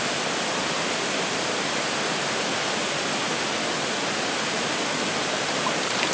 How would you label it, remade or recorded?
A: recorded